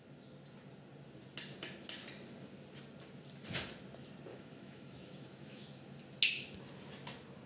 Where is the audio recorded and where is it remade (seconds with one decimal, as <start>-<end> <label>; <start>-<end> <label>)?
0.0-4.3 recorded; 4.3-5.8 remade; 5.8-7.5 recorded